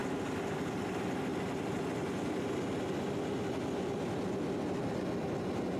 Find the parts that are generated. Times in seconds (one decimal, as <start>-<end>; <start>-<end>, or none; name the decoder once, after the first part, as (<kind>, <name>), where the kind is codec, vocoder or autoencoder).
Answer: none